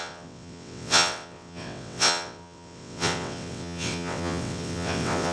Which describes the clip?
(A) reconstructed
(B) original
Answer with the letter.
A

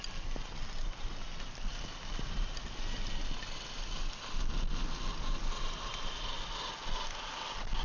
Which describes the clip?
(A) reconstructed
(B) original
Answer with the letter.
B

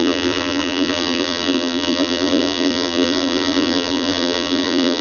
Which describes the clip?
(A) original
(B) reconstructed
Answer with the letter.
B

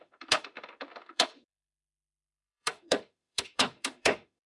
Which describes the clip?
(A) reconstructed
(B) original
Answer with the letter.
A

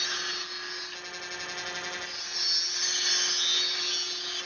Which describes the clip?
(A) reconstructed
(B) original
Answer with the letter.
B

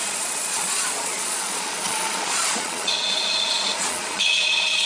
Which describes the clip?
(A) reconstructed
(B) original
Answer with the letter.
A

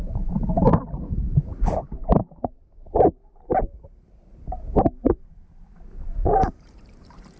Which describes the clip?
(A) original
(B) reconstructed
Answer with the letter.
B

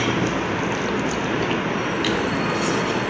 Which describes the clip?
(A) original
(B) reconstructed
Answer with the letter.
A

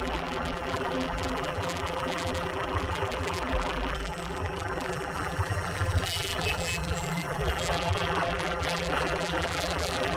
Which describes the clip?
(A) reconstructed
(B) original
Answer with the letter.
A